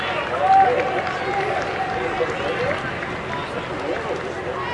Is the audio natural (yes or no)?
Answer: yes